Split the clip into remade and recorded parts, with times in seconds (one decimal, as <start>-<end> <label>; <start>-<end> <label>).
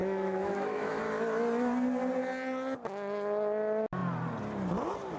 0.0-0.9 remade; 0.9-5.2 recorded